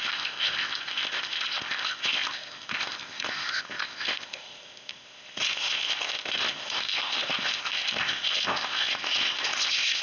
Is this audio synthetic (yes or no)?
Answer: yes